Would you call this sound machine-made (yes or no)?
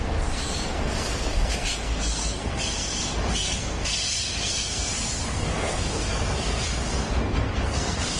yes